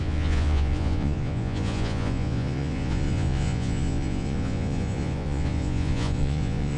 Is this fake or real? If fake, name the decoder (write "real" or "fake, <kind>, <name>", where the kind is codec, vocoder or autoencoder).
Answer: fake, vocoder, Vocos